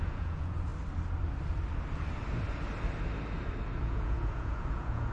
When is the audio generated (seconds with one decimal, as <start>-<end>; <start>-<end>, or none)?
0.0-0.7; 3.8-5.1

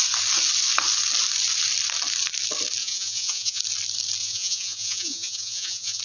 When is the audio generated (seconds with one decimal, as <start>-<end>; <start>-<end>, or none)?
2.8-3.6; 4.2-6.0

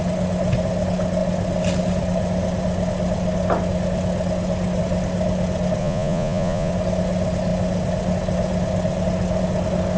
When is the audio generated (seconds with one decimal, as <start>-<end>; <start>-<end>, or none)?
5.8-6.7

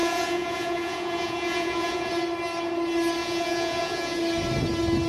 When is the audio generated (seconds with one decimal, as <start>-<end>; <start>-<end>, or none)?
0.0-2.1; 3.2-4.2

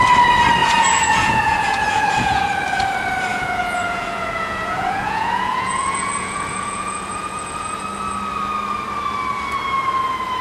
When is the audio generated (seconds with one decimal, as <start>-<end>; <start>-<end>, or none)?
0.6-2.4; 3.3-7.8

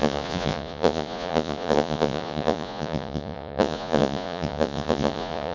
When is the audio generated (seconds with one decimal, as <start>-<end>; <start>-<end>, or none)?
0.0-5.5

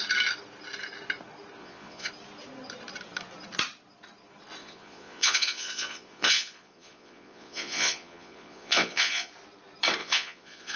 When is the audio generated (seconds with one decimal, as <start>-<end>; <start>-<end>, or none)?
1.6-2.1; 4.6-9.3; 10.0-10.8